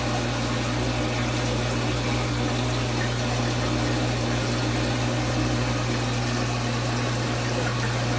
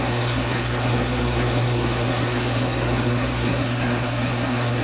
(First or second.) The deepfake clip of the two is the second